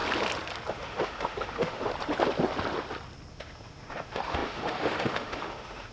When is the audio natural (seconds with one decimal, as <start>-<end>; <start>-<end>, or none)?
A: 0.0-0.7; 1.9-3.3